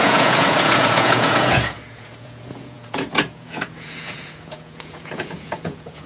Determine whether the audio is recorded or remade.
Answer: remade